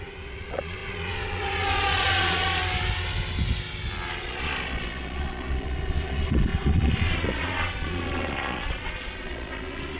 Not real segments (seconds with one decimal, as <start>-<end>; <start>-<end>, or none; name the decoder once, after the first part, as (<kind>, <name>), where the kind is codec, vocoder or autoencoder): 0.0-2.6 (vocoder, Vocos); 4.2-10.0